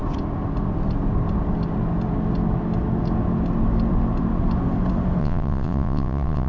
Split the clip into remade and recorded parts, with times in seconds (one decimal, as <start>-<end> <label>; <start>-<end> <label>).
0.0-5.2 recorded; 5.2-6.5 remade